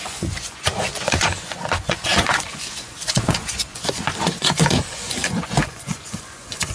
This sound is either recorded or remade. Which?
remade